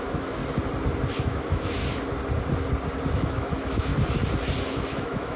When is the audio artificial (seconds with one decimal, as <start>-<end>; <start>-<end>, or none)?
0.0-0.4; 1.1-1.8; 3.1-3.9; 4.7-5.4